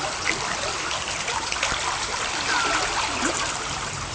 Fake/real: real